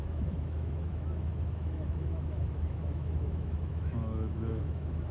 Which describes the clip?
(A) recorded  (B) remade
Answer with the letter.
B